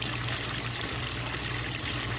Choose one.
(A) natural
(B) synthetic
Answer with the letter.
A